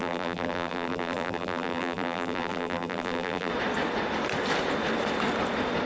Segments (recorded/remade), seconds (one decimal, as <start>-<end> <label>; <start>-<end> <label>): 0.0-3.5 remade; 3.5-5.9 recorded